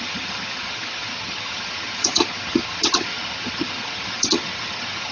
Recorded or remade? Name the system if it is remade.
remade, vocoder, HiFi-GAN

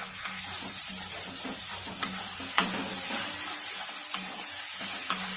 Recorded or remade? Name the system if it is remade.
recorded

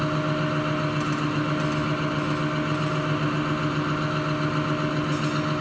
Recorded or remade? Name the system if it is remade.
recorded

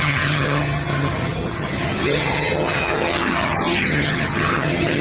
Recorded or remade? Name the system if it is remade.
remade, vocoder, HiFi-GAN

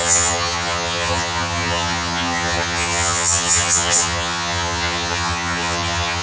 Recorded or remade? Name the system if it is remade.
remade, vocoder, HiFi-GAN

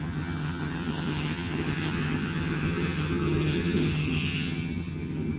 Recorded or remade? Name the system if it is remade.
remade, vocoder, HiFi-GAN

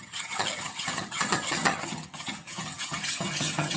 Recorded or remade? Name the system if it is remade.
remade, vocoder, HiFi-GAN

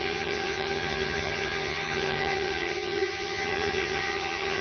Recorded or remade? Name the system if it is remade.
remade, vocoder, HiFi-GAN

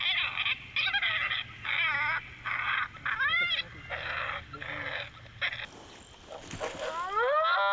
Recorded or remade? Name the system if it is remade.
recorded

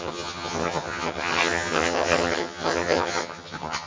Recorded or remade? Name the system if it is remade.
remade, vocoder, HiFi-GAN